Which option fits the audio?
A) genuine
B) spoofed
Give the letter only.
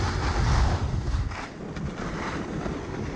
A